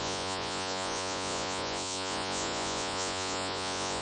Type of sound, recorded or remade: remade